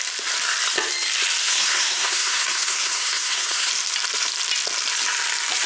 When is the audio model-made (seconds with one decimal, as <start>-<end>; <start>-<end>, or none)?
1.4-3.7